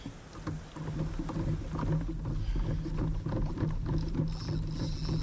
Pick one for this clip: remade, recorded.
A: recorded